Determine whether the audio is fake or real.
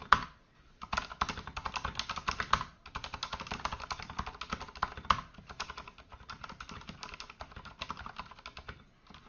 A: real